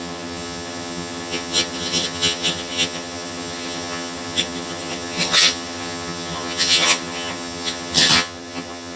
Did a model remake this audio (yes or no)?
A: yes